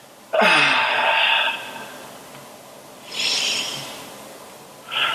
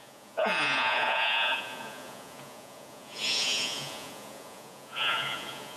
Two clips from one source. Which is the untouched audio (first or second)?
first